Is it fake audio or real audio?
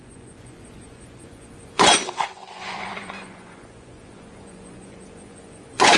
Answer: fake